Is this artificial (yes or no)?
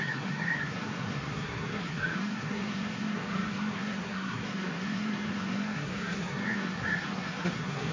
yes